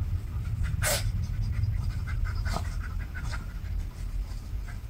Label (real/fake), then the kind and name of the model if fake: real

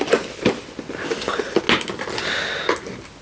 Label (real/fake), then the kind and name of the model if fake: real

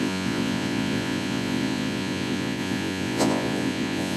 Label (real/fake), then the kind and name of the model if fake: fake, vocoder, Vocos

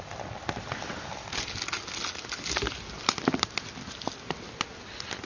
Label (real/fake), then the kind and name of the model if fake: real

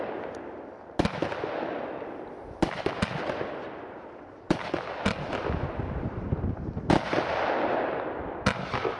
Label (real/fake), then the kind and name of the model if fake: real